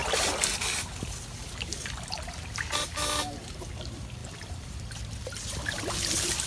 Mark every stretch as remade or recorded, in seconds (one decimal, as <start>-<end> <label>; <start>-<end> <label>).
0.0-6.5 recorded